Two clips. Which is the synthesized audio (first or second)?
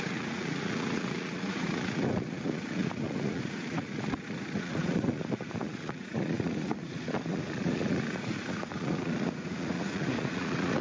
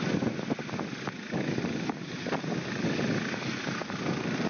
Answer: first